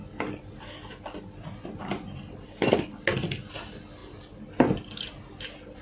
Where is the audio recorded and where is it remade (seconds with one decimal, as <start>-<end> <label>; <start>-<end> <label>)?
0.0-5.8 recorded